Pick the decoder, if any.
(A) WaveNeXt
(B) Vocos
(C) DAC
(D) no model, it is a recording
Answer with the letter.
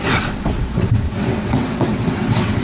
A